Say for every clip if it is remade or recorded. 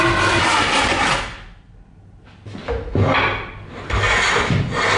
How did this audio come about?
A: recorded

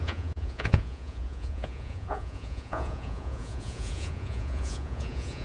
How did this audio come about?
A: remade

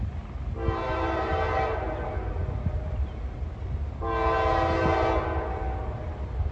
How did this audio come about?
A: recorded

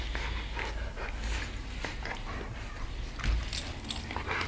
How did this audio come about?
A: recorded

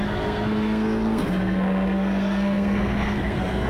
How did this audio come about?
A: remade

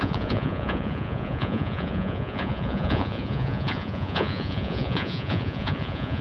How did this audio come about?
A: remade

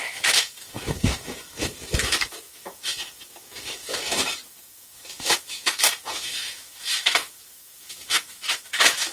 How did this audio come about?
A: remade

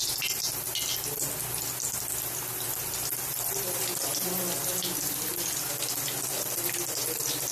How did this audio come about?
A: recorded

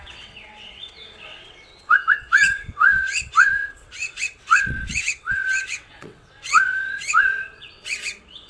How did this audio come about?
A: remade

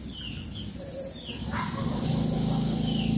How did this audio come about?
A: recorded